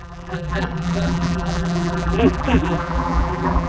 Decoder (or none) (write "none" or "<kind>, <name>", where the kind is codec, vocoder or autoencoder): vocoder, BigVGAN v2